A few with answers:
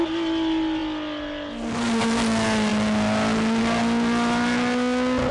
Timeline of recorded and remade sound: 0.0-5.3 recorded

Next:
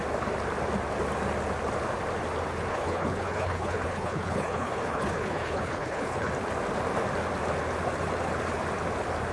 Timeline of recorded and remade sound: 0.0-2.7 recorded; 2.7-6.3 remade; 6.3-9.3 recorded

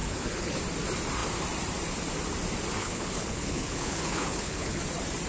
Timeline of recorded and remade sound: 0.0-0.6 remade; 0.6-2.8 recorded; 2.8-4.8 remade; 4.8-5.3 recorded

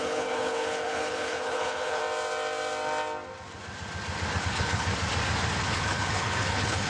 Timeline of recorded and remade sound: 0.0-2.0 remade; 2.0-4.4 recorded; 4.4-4.9 remade; 4.9-5.6 recorded; 5.6-6.9 remade

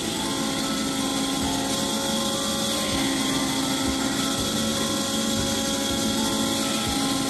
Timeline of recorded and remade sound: 0.0-7.3 recorded

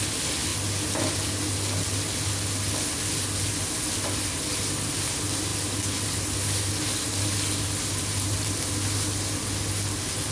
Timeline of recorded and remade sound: 0.0-10.3 recorded

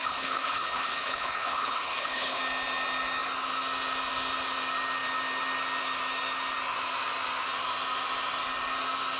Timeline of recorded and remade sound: 0.0-2.4 remade; 2.4-9.2 recorded

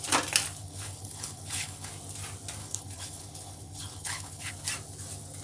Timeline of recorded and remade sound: 0.0-0.6 recorded; 0.6-1.9 remade; 1.9-2.6 recorded; 2.6-4.5 remade; 4.5-5.4 recorded